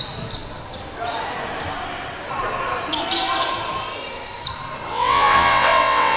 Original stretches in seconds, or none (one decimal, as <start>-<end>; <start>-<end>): 0.0-4.9